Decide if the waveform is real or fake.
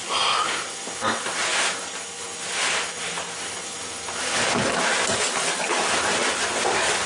real